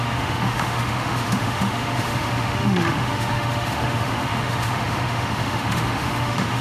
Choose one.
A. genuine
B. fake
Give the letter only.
B